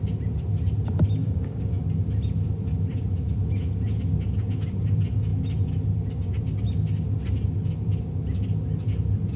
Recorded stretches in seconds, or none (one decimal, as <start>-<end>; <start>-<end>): 0.0-1.2; 1.8-9.4

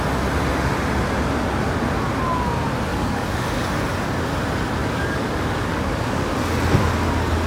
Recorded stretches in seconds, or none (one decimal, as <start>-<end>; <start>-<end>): 0.0-2.9; 3.4-4.8; 6.3-7.5